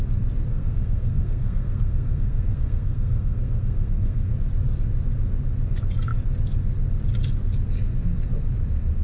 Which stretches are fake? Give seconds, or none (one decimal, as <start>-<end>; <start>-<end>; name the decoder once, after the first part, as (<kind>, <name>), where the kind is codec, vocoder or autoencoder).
0.5-4.3 (codec, SNAC)